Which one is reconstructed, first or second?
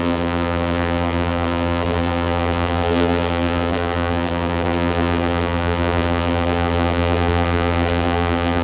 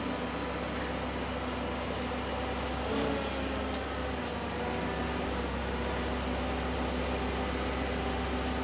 first